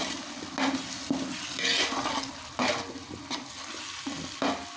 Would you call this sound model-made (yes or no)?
no